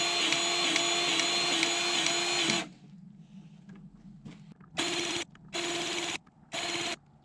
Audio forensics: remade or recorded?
recorded